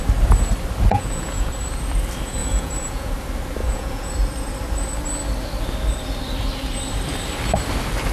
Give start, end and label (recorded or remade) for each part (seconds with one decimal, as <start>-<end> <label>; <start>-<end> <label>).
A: 0.0-0.9 recorded; 0.9-1.5 remade; 1.5-2.4 recorded; 2.4-3.1 remade; 3.1-3.6 recorded; 3.6-4.1 remade; 4.1-8.1 recorded